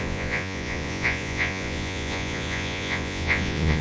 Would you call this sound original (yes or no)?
no